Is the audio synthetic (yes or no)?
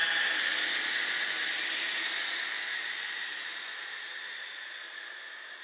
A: no